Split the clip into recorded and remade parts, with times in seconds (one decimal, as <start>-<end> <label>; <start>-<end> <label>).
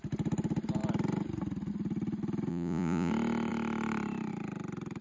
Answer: 0.0-2.5 recorded; 2.5-3.1 remade; 3.1-5.0 recorded